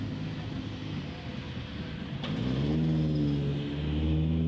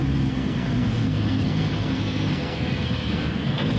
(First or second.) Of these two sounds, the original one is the first